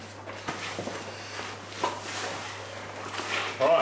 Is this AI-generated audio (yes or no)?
no